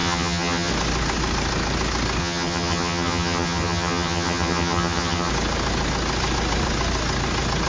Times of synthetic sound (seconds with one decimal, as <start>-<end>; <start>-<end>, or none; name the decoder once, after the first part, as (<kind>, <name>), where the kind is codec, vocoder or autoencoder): 0.0-0.7 (vocoder, HiFi-GAN); 2.2-5.3

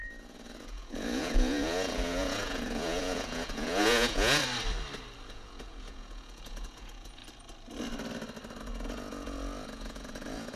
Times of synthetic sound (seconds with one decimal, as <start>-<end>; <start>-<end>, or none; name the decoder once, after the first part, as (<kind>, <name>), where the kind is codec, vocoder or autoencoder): 0.0-4.4 (vocoder, Vocos); 5.3-7.2; 8.7-10.6

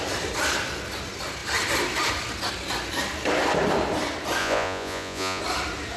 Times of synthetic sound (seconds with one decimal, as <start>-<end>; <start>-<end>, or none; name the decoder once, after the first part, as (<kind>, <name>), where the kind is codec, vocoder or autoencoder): 4.4-5.4 (vocoder, Vocos)

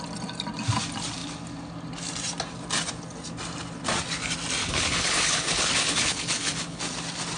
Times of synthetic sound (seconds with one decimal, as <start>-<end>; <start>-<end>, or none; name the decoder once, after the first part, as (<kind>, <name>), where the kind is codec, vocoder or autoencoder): 4.6-6.8 (codec, HILCodec)

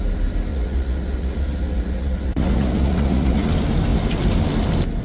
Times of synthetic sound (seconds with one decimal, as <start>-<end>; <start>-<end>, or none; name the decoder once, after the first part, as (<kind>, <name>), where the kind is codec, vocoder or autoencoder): 0.5-3.5 (vocoder, Vocos)

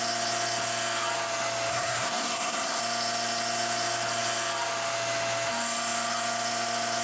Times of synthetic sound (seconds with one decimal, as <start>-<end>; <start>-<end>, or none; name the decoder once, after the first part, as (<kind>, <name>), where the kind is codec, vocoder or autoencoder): 1.7-2.8 (codec, SNAC)